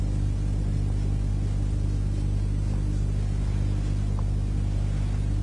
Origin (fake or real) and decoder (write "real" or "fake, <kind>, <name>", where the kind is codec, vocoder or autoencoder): real